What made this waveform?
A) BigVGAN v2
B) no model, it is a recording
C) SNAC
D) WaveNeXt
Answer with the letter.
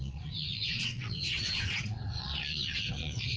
D